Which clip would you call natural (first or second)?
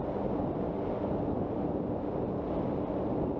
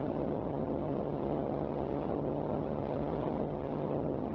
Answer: first